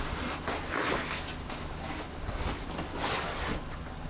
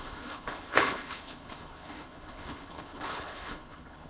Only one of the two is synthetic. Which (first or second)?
second